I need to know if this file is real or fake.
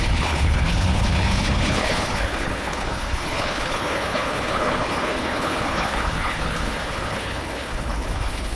fake